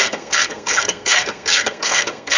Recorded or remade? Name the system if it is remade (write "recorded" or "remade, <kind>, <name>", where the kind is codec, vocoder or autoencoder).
remade, codec, SNAC